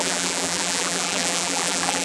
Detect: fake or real fake